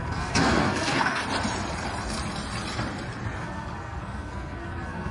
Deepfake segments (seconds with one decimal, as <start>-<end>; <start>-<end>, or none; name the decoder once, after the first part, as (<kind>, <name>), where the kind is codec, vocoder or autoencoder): 0.0-1.2 (codec, SNAC); 3.4-5.1